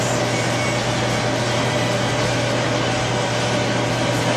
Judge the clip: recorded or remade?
recorded